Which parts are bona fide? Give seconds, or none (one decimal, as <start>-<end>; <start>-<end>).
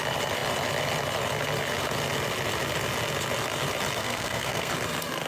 0.0-4.0; 4.7-5.3